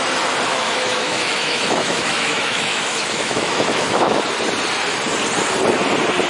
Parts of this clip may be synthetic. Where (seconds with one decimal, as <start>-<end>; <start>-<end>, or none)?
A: 0.5-4.2